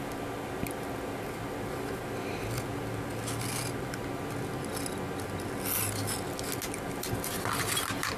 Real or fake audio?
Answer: real